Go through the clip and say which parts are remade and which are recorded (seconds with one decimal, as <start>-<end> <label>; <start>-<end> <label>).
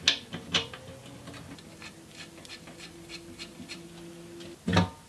0.0-5.1 recorded